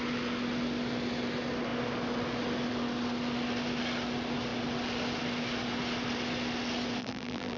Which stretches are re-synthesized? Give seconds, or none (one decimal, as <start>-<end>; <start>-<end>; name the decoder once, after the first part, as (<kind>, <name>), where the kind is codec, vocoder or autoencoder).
7.0-7.6 (vocoder, BigVGAN v2)